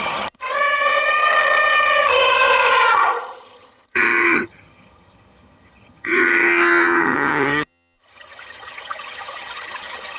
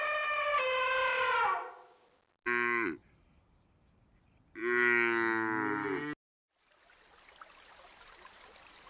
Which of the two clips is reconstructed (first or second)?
first